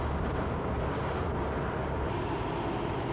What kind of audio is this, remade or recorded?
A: recorded